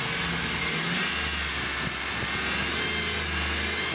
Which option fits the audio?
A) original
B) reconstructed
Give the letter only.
A